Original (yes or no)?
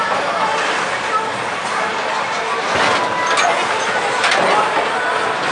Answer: yes